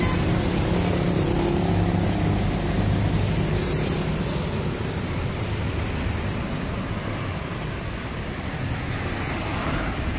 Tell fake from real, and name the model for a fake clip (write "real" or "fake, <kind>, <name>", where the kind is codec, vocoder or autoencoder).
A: real